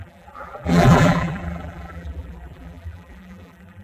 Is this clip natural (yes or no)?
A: no